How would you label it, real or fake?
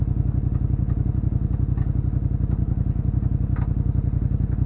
real